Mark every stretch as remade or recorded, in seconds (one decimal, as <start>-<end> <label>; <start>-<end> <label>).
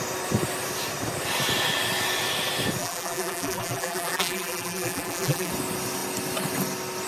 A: 0.0-2.8 recorded; 2.8-5.5 remade; 5.5-7.1 recorded